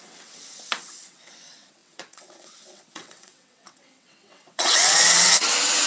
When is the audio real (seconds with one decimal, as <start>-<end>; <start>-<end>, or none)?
none